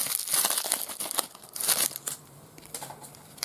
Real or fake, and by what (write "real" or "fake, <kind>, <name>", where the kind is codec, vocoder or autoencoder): real